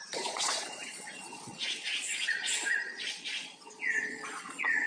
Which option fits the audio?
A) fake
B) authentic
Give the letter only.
A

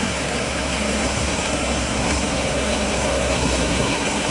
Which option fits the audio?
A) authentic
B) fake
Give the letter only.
B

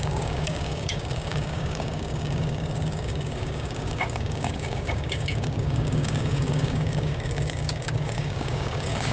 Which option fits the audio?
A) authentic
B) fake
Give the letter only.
B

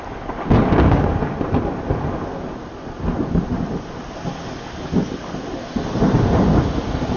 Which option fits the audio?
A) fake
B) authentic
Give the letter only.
B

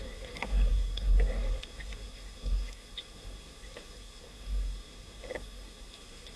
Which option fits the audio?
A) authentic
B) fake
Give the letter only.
B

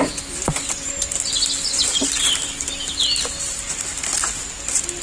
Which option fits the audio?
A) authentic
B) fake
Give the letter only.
A